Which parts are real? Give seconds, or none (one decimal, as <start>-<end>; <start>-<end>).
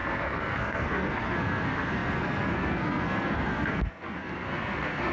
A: none